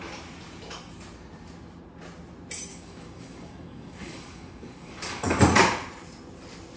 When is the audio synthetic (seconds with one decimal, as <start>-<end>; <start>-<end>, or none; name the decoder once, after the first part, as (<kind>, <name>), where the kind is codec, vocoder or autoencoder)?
2.7-5.4 (codec, DAC)